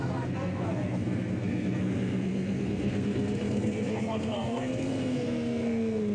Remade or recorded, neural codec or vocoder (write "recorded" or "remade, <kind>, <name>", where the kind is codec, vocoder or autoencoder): remade, codec, SNAC